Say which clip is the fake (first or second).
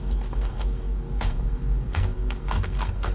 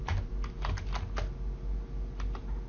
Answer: first